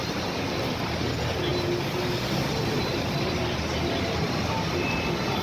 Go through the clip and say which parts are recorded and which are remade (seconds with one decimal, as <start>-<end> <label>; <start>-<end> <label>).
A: 0.0-1.5 remade; 1.5-4.2 recorded; 4.2-5.4 remade